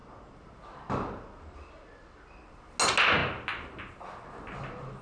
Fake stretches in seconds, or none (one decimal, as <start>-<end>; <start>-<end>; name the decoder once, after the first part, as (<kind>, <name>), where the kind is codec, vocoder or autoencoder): none